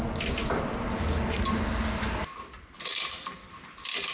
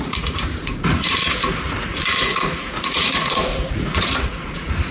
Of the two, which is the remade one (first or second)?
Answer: second